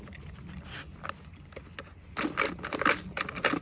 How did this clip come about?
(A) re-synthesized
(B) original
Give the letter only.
B